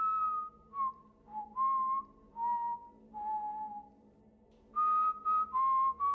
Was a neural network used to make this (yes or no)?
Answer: no